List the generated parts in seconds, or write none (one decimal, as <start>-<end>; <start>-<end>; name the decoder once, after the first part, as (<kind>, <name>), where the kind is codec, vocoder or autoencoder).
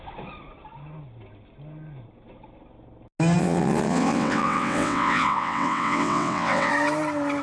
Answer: 3.4-6.7 (vocoder, WaveNeXt)